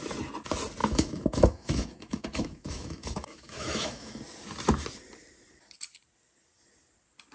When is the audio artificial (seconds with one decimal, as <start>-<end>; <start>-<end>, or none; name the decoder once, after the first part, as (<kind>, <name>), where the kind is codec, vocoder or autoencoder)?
0.8-4.2 (autoencoder, DAC-VAE)